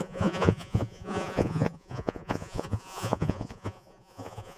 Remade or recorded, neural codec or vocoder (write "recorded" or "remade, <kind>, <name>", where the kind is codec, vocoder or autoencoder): remade, vocoder, Vocos